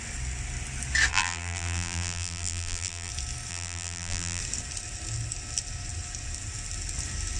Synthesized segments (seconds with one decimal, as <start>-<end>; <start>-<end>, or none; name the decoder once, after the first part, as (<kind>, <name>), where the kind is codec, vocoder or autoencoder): 1.1-3.1 (vocoder, BigVGAN v2); 3.5-4.4